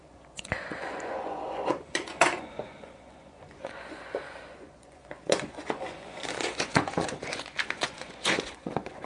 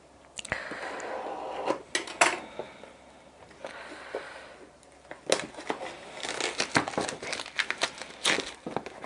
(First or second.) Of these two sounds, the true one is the second